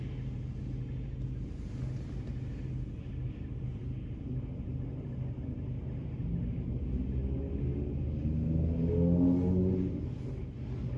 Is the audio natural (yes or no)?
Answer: yes